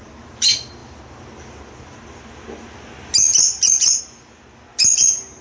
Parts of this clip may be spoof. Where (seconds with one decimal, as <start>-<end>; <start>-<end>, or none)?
none